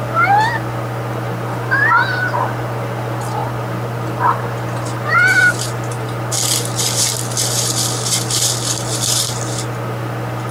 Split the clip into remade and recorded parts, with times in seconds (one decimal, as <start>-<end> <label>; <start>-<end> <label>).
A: 0.0-10.5 recorded

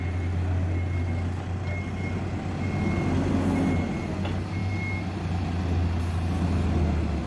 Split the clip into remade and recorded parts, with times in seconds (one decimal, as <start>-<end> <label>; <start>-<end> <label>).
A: 0.0-7.3 recorded

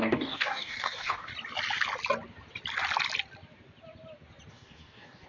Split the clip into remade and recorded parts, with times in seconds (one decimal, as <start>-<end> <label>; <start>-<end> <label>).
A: 0.0-1.3 remade; 1.3-4.5 recorded; 4.5-5.3 remade

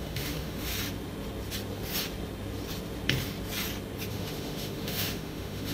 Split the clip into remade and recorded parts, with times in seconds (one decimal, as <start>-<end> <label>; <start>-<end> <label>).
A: 0.0-0.7 remade; 0.7-4.1 recorded; 4.1-5.7 remade

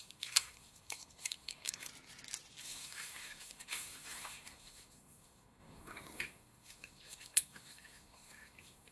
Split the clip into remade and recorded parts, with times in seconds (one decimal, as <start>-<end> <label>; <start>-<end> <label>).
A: 0.0-1.9 remade; 1.9-2.6 recorded; 2.6-8.9 remade

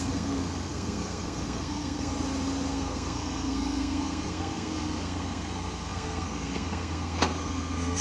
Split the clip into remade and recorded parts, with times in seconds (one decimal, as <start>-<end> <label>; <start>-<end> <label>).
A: 0.0-2.1 remade; 2.1-2.7 recorded; 2.7-8.0 remade

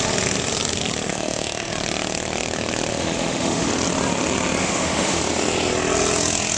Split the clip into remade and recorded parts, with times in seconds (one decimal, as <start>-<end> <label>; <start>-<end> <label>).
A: 0.0-1.1 recorded; 1.1-1.7 remade; 1.7-2.9 recorded; 2.9-3.7 remade; 3.7-4.6 recorded; 4.6-5.2 remade; 5.2-6.6 recorded